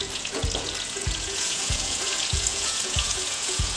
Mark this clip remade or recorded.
remade